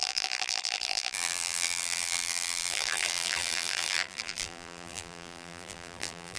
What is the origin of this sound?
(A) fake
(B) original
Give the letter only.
A